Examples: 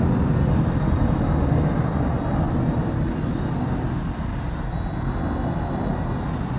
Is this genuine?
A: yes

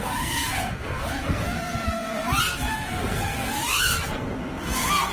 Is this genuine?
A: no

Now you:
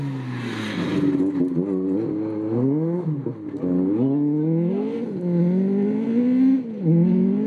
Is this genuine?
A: yes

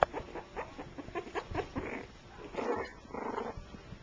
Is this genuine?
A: yes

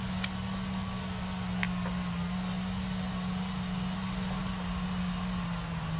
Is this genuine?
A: yes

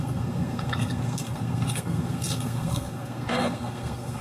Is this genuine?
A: no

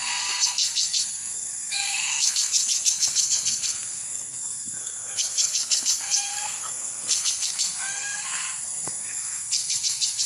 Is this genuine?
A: no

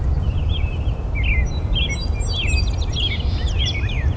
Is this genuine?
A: yes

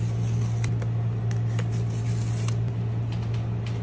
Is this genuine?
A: yes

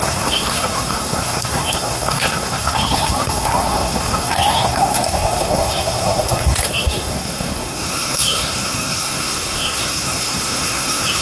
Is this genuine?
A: no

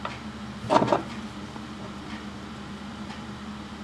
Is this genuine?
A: yes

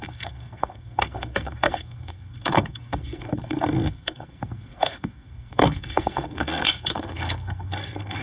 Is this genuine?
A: no